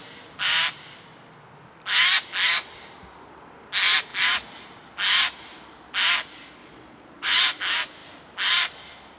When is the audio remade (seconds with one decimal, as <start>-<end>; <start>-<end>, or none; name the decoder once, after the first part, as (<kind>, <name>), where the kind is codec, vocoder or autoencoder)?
6.6-7.4 (vocoder, Vocos)